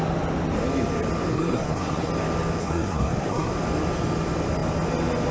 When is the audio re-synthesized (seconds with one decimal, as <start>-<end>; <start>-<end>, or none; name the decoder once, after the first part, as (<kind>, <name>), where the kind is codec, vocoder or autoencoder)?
1.3-2.1 (codec, SNAC); 2.6-3.5